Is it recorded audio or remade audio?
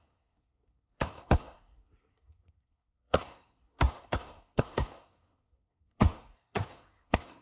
remade